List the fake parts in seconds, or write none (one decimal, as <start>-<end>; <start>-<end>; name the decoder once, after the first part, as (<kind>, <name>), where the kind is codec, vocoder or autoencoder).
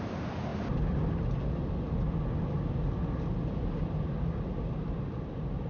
0.5-1.1 (vocoder, BigVGAN v2)